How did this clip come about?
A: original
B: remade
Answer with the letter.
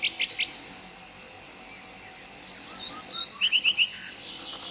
A